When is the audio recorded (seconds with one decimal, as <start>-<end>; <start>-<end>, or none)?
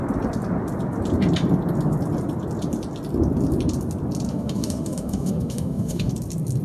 0.0-4.3; 6.1-6.6